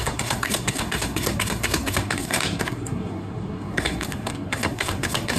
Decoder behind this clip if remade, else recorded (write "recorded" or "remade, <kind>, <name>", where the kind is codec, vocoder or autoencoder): remade, codec, SNAC